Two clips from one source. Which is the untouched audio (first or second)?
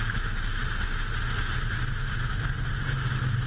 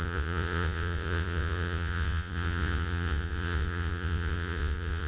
first